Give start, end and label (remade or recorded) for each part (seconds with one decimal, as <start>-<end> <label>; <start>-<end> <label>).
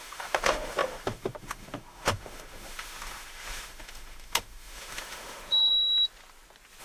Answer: 0.0-5.7 remade; 5.7-6.8 recorded